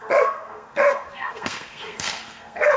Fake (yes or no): yes